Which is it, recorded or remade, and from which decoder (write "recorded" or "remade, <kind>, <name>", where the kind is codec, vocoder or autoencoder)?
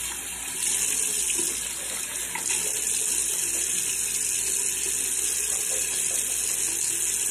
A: recorded